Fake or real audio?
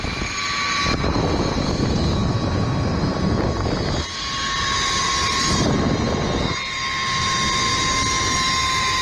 real